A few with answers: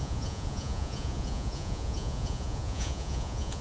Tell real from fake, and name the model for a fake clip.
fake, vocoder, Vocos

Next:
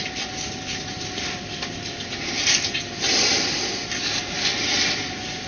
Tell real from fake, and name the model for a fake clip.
real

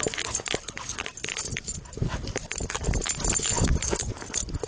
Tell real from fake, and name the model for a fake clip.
real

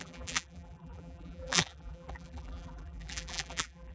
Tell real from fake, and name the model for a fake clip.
fake, vocoder, BigVGAN v2